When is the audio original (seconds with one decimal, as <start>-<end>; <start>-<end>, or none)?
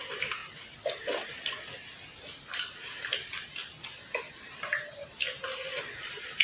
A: 0.4-1.0; 1.7-2.5; 3.6-5.2